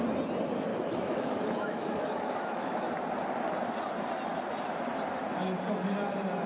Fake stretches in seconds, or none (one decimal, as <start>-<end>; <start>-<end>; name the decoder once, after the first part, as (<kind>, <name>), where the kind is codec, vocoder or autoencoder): 0.7-2.8 (autoencoder, DAC-VAE)